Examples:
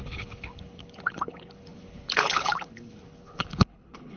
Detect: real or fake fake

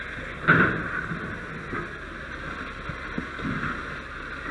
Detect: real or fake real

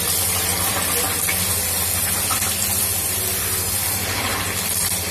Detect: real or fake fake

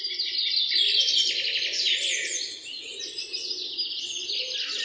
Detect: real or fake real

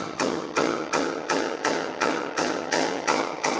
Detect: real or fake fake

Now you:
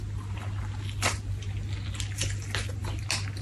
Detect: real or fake real